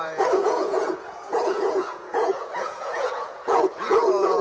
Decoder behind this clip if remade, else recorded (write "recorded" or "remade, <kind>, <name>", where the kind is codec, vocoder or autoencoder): remade, vocoder, Vocos